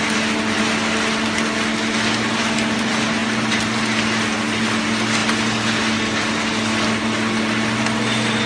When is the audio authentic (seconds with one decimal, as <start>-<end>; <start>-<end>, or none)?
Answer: 0.0-8.5